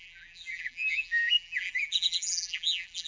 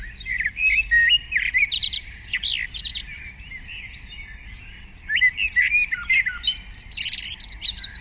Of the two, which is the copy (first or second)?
first